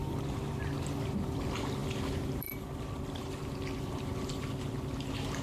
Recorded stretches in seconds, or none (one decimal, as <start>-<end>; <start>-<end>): 0.0-5.4